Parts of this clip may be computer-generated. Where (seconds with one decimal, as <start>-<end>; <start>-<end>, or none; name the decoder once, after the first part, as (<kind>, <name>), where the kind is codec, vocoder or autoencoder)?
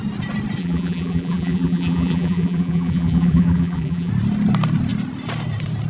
0.6-4.1 (vocoder, BigVGAN v2)